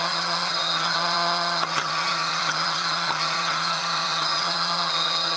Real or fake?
fake